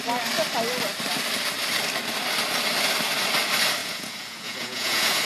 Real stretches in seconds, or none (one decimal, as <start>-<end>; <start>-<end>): 0.0-3.8

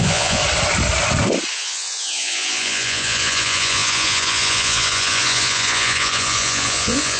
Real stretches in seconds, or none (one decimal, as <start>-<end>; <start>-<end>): 0.4-1.5

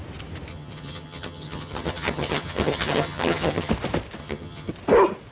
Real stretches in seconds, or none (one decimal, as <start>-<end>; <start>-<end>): 0.0-0.5; 3.7-4.2; 4.7-5.3

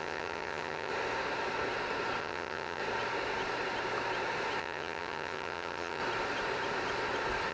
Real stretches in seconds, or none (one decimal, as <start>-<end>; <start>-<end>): 0.9-2.2; 2.8-4.6; 6.0-7.5

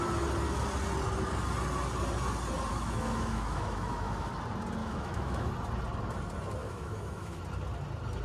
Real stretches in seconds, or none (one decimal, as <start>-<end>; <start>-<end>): 0.0-2.7; 4.3-4.8; 5.5-6.6; 7.4-8.2